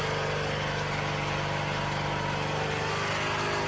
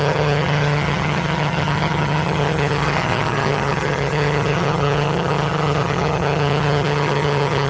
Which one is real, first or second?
first